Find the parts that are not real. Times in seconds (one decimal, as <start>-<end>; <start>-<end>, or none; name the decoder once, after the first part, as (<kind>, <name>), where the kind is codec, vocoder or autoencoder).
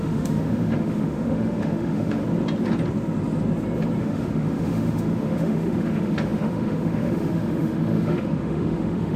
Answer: 0.0-2.2 (autoencoder, DAC-VAE); 4.0-9.2